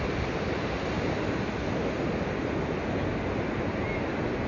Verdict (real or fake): real